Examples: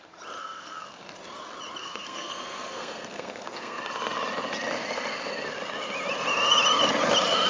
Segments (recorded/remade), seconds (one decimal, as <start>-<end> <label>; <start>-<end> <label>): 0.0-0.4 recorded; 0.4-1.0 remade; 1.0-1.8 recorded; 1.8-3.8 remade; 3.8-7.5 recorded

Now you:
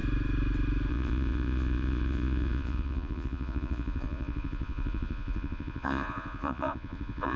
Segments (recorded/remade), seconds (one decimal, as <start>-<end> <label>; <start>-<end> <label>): 0.0-0.9 recorded; 0.9-7.4 remade

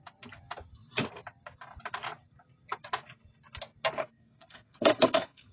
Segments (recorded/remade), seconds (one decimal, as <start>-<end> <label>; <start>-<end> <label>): 0.0-4.0 recorded; 4.0-5.5 remade

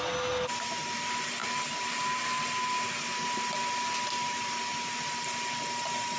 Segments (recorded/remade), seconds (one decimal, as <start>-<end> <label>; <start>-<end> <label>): 0.0-6.2 recorded

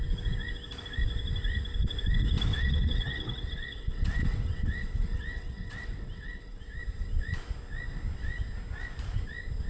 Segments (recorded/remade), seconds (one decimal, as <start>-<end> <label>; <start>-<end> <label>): 0.0-2.5 recorded; 2.5-6.6 remade; 6.6-9.7 recorded